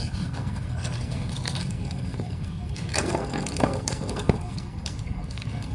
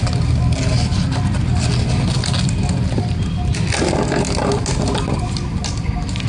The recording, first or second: second